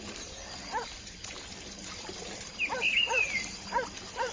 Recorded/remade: remade